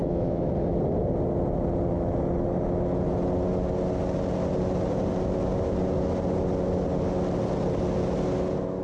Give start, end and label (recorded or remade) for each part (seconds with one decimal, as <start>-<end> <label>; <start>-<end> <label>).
0.0-0.5 remade; 0.5-8.8 recorded